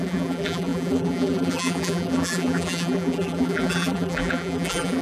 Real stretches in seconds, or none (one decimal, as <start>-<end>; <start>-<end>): none